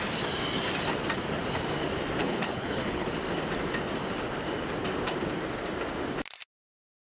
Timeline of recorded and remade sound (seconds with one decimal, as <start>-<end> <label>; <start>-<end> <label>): 0.0-2.2 recorded; 2.2-3.1 remade; 3.1-7.1 recorded